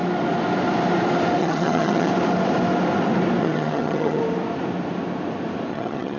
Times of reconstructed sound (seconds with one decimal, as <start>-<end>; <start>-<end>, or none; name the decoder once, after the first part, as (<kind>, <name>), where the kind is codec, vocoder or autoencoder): 1.4-2.1 (vocoder, HiFi-GAN); 3.4-4.2; 5.7-6.2